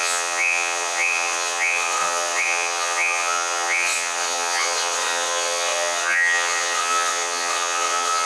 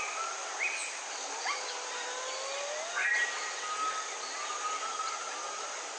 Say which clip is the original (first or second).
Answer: second